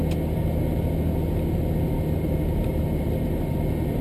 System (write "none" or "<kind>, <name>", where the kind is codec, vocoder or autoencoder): none